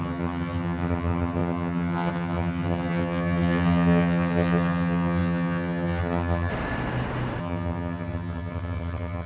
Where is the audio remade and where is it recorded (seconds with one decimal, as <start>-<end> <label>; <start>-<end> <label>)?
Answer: 0.0-6.5 remade; 6.5-7.4 recorded; 7.4-9.3 remade